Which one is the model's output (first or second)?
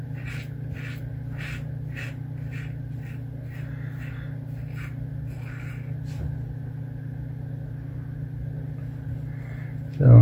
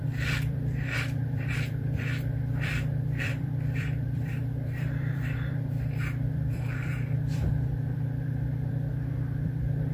second